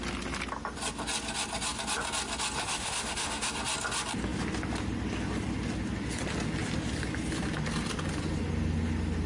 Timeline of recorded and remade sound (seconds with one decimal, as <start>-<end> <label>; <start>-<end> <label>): 0.0-2.6 recorded; 2.6-3.5 remade; 3.5-9.3 recorded